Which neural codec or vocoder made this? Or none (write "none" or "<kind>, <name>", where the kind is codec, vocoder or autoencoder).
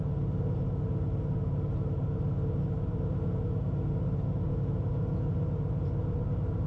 none